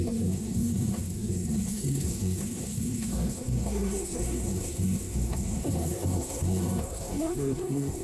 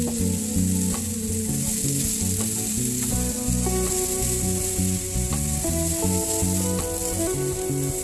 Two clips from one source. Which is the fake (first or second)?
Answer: first